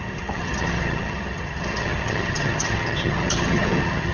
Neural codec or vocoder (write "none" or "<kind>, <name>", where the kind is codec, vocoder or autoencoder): vocoder, HiFi-GAN